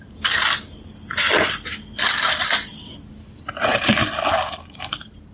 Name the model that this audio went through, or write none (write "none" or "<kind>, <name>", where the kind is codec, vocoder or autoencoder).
none